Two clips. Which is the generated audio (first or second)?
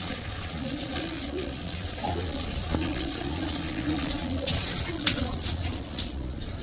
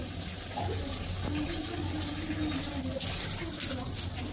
first